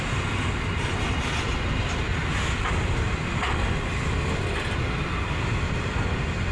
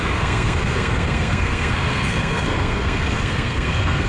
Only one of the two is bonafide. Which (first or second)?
first